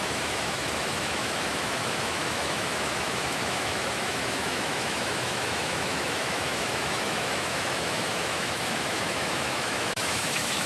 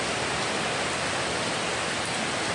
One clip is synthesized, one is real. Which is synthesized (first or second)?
first